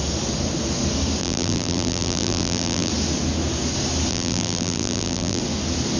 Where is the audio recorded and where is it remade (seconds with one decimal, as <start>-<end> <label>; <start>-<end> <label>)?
0.0-1.2 recorded; 1.2-2.9 remade; 2.9-4.1 recorded; 4.1-5.4 remade; 5.4-6.0 recorded